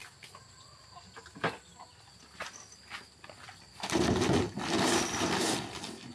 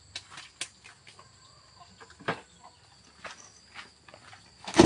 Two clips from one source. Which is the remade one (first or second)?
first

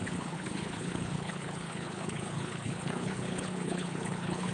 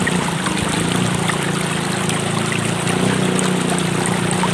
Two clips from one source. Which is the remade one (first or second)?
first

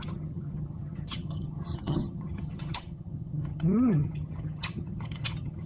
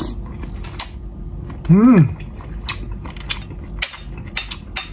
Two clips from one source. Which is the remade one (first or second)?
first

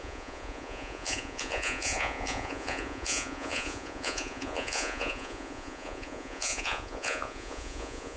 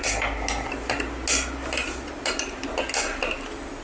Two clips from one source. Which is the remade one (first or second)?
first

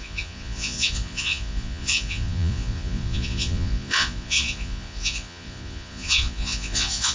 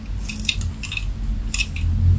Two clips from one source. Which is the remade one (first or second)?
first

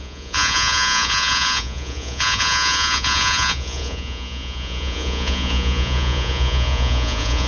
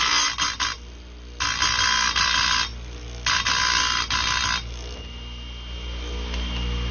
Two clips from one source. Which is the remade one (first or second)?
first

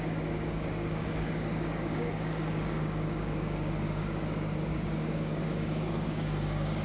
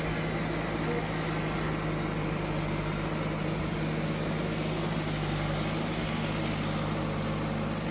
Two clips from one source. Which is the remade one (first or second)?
first